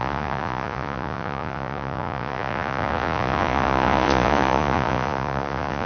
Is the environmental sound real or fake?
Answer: fake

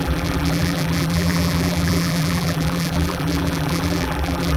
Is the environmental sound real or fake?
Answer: fake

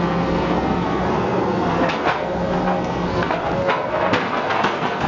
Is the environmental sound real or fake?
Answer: fake